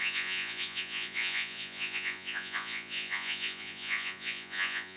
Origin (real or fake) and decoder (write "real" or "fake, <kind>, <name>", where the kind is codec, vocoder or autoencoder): fake, vocoder, Vocos